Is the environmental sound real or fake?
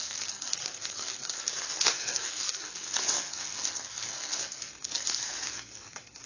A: fake